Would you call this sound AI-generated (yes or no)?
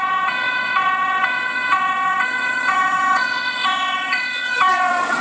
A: yes